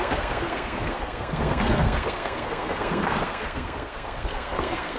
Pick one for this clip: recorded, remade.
remade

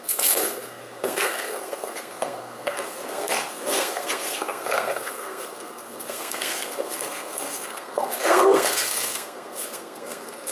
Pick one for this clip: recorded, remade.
remade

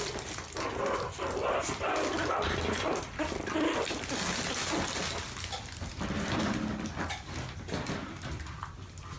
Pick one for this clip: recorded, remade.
recorded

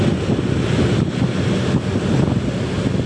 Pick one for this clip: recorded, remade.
recorded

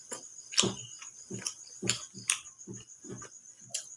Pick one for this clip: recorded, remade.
remade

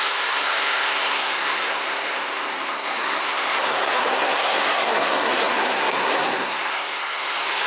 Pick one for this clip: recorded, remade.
remade